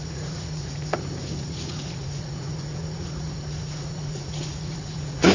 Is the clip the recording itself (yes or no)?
no